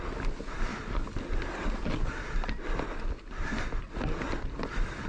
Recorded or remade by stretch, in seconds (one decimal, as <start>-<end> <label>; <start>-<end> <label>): 0.0-5.1 recorded